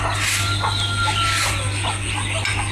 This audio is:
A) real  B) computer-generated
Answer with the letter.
A